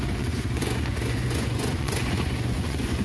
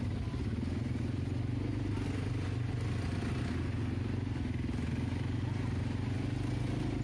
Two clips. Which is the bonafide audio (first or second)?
second